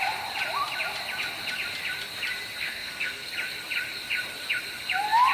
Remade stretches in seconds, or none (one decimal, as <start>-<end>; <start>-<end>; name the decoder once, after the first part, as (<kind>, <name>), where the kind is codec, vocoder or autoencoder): 2.6-3.3 (codec, SNAC)